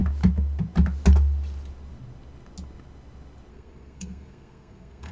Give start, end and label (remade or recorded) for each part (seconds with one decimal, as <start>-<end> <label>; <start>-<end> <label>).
0.0-3.5 recorded; 3.5-5.1 remade